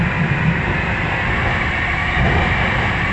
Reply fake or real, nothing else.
real